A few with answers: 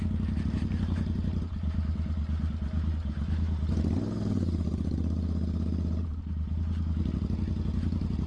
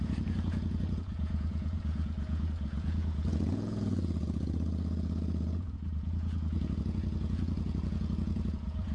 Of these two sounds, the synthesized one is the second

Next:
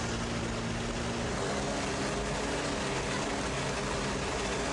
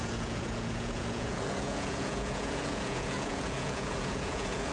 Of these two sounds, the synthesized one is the second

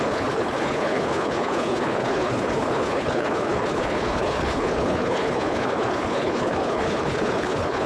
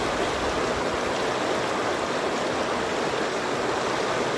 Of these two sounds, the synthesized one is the first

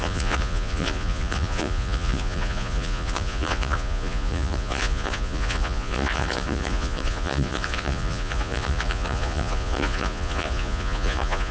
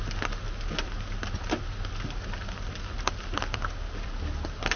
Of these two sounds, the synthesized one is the first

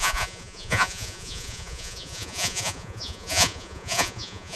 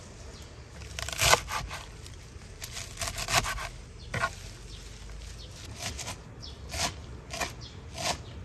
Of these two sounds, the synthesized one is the first